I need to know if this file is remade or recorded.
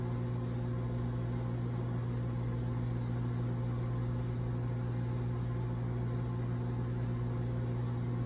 recorded